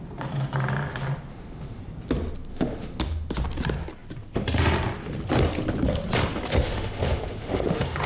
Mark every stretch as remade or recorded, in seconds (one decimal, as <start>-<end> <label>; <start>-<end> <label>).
0.0-1.3 recorded; 1.3-1.8 remade; 1.8-2.5 recorded; 2.5-3.0 remade; 3.0-6.6 recorded; 6.6-8.1 remade